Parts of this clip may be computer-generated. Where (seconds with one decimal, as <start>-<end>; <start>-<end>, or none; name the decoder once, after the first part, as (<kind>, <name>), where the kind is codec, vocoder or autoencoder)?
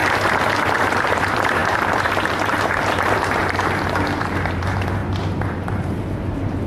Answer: 0.0-6.7 (vocoder, BigVGAN v2)